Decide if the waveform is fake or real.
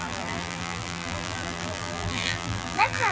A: fake